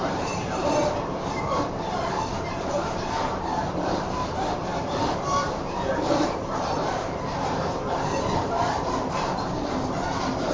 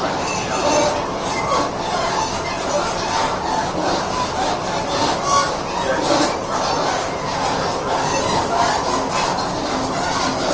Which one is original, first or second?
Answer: second